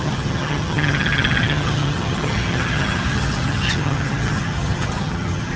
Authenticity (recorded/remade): remade